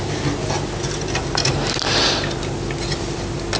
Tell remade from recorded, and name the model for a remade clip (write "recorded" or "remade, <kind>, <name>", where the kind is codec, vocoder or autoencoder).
recorded